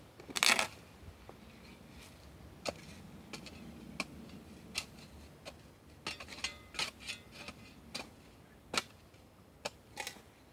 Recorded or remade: recorded